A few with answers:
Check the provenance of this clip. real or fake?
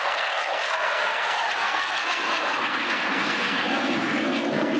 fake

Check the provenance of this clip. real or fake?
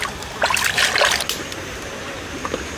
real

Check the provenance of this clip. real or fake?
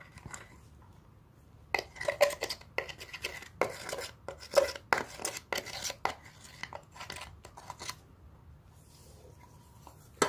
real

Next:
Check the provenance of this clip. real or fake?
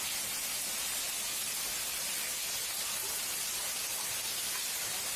real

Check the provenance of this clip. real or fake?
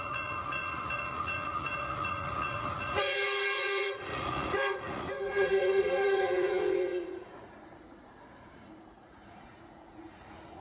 fake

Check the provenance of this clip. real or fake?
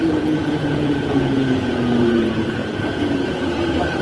fake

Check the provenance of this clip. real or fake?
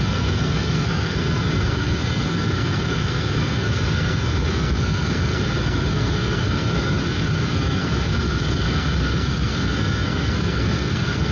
fake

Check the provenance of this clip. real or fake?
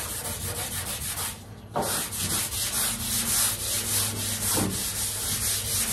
real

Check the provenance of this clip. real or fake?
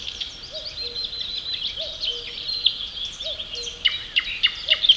real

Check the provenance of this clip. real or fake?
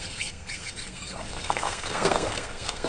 fake